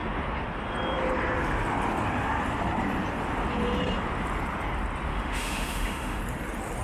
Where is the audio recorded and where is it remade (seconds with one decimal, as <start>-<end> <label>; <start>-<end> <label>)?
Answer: 0.0-5.1 recorded; 5.1-6.2 remade; 6.2-6.8 recorded

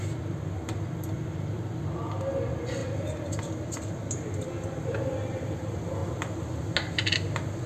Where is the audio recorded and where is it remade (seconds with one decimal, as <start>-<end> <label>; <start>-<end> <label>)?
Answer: 0.0-7.7 recorded

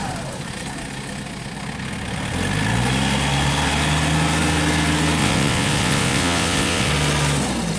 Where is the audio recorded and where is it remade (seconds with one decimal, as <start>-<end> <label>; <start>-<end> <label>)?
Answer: 0.0-5.2 recorded; 5.2-6.9 remade; 6.9-7.8 recorded

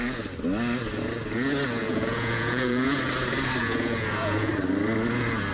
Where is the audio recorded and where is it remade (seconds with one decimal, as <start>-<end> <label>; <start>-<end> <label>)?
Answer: 0.0-1.8 recorded; 1.8-3.0 remade; 3.0-3.6 recorded; 3.6-4.5 remade; 4.5-5.5 recorded

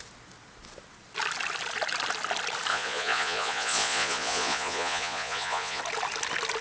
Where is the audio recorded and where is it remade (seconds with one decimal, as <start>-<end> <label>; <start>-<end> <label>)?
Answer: 0.0-2.7 recorded; 2.7-5.8 remade; 5.8-6.6 recorded

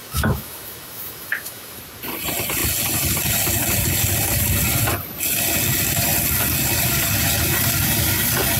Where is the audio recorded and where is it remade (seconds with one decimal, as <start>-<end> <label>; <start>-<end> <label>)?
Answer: 0.0-1.8 remade; 1.8-8.6 recorded

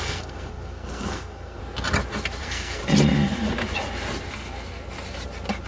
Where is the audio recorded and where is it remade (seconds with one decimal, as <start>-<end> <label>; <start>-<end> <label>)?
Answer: 0.0-1.6 remade; 1.6-2.4 recorded; 2.4-2.8 remade; 2.8-5.7 recorded